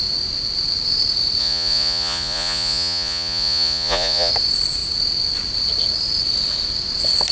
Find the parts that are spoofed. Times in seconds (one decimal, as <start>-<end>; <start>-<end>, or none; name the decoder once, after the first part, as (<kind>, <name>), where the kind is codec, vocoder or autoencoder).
1.4-4.3 (vocoder, Vocos)